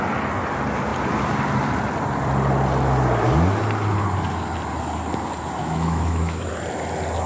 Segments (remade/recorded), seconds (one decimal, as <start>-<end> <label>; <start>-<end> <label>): 0.0-5.6 recorded; 5.6-6.5 remade; 6.5-7.3 recorded